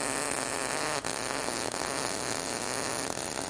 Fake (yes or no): no